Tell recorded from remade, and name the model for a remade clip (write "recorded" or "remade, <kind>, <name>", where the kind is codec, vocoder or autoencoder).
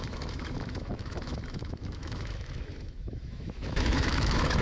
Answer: remade, autoencoder, DAC-VAE